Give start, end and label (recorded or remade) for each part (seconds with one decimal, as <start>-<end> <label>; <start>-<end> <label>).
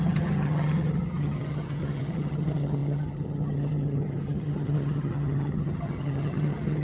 0.0-6.8 remade